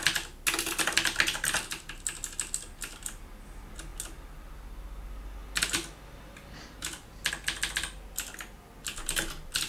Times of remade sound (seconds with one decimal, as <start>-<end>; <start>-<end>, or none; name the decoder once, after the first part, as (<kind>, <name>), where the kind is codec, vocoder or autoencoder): none